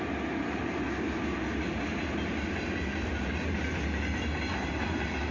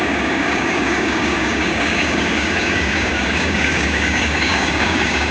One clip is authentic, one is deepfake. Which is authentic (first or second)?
first